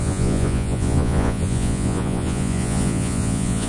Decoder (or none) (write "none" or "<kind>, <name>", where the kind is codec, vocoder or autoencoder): vocoder, Vocos